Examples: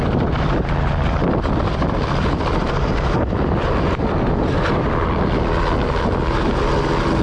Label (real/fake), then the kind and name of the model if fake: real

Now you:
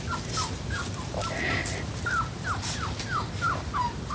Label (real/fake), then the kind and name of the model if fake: real